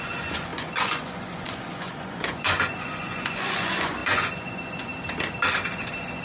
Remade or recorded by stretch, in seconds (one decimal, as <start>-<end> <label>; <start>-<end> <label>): 0.0-4.9 remade; 4.9-5.7 recorded; 5.7-6.2 remade